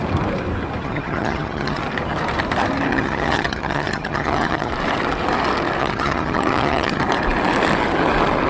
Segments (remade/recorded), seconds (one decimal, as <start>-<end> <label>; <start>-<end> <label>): 0.0-0.8 recorded; 0.8-1.8 remade; 1.8-2.9 recorded; 2.9-4.7 remade; 4.7-5.8 recorded; 5.8-7.0 remade; 7.0-8.5 recorded